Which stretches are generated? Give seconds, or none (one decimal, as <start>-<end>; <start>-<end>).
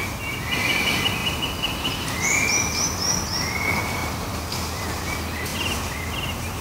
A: 1.2-2.1; 4.0-4.5; 5.5-6.6